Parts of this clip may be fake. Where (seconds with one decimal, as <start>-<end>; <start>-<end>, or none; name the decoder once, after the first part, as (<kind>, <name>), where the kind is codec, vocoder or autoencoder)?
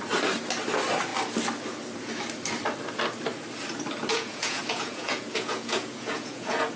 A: 4.1-6.8 (vocoder, Vocos)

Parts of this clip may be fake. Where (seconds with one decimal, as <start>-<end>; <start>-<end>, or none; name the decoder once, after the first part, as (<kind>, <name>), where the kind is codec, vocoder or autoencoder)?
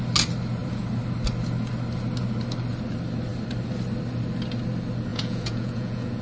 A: 5.1-6.2 (vocoder, Vocos)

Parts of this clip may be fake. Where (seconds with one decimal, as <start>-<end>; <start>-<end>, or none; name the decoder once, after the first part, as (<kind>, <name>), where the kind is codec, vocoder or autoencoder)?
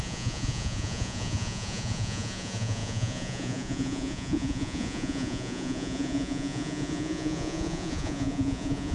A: 0.0-8.9 (vocoder, Vocos)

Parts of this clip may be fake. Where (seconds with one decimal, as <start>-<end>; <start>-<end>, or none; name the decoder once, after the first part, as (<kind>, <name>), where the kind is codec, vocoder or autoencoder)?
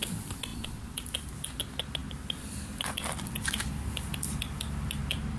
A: none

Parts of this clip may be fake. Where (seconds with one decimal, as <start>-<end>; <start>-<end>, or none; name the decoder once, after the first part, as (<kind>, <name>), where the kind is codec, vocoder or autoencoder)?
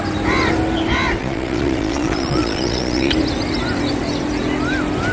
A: 1.2-3.1 (vocoder, Vocos)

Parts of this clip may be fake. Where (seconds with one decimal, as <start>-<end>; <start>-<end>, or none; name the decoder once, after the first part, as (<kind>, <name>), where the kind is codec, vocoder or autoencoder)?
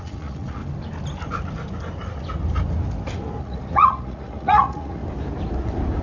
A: 0.0-0.6 (vocoder, Vocos); 3.4-5.0